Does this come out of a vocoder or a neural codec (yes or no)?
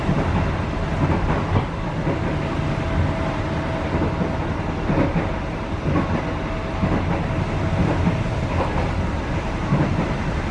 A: no